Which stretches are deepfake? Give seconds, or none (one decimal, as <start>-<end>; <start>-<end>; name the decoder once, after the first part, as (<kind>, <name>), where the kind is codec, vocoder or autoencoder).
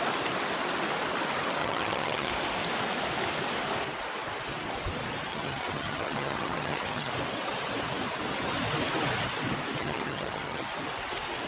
1.6-2.3 (vocoder, HiFi-GAN); 5.3-7.1; 9.8-10.7